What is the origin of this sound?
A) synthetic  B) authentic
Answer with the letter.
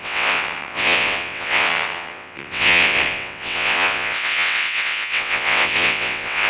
A